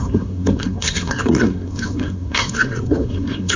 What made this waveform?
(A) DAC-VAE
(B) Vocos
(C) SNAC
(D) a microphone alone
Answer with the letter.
C